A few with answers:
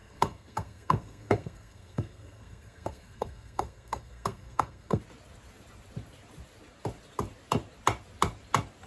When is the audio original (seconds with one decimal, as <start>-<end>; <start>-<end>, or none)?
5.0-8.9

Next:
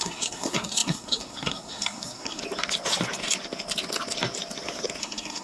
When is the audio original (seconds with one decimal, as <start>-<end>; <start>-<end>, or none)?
2.4-5.0

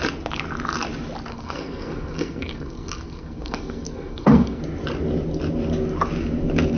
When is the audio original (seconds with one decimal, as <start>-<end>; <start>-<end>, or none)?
0.0-1.3; 4.6-6.8

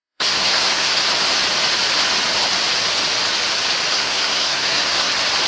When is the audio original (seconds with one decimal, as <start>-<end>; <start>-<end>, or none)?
1.1-3.9; 5.1-5.5

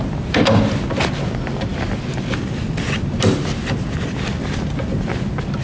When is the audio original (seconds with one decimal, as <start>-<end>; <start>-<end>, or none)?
0.0-5.6

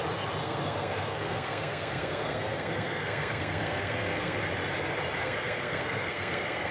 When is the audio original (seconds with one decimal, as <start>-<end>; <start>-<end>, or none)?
0.0-0.4; 4.4-5.2

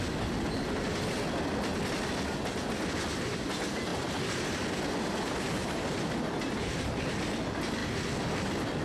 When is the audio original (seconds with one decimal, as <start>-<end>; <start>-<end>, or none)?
0.0-8.8

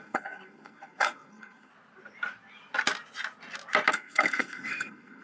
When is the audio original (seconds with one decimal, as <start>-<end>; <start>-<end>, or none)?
1.7-3.9